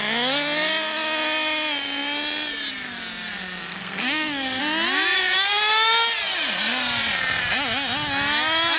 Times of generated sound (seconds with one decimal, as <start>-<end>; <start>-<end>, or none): 3.7-4.6